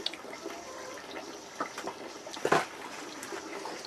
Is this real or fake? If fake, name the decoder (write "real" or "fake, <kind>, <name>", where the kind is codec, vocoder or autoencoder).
real